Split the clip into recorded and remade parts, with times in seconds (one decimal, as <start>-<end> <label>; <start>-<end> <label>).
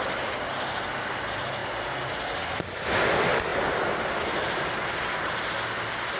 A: 0.0-6.2 recorded